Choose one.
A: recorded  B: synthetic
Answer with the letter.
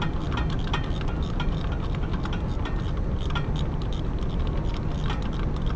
A